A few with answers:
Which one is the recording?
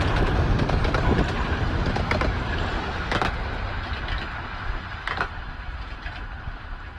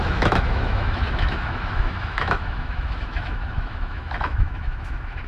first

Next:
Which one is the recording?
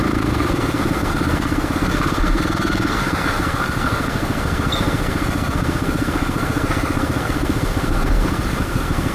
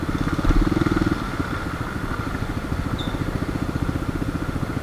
second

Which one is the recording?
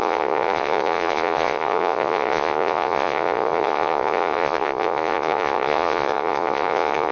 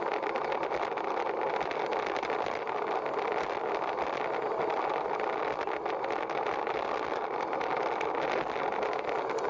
second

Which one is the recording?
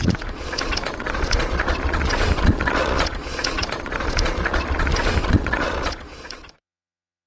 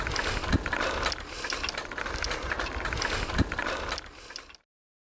second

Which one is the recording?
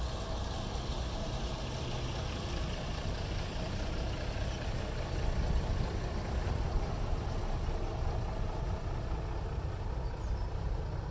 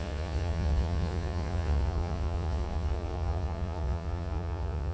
first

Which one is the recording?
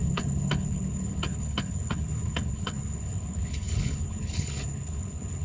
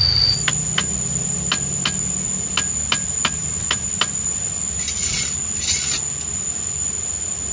second